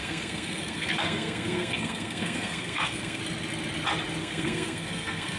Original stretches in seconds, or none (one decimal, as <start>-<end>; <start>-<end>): 3.2-4.2